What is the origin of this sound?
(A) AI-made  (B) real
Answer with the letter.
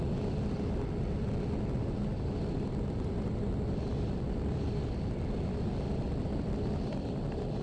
B